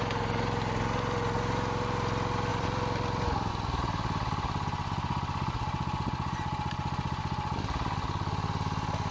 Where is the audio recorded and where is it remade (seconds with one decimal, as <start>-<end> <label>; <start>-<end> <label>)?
0.0-2.5 recorded; 2.5-3.5 remade; 3.5-9.1 recorded